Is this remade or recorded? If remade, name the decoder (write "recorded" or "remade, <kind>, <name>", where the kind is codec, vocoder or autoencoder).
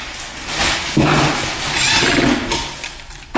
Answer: recorded